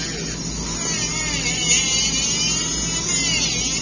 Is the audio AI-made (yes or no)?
no